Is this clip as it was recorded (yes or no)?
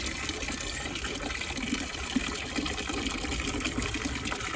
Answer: yes